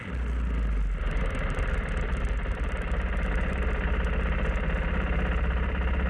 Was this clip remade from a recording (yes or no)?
no